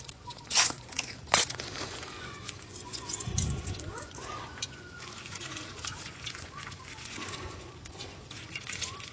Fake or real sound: fake